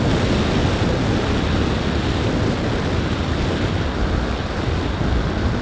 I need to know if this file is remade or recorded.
recorded